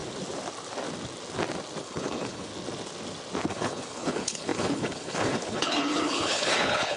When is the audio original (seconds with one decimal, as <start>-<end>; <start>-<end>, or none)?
0.0-1.8; 2.5-3.5